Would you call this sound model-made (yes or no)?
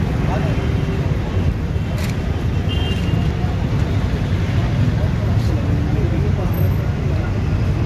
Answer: no